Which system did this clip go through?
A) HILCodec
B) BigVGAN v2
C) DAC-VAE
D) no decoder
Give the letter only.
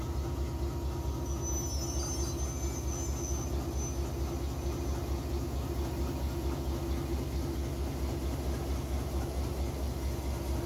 D